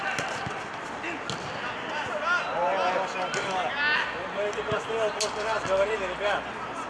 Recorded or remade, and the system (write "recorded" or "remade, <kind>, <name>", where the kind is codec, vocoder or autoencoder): recorded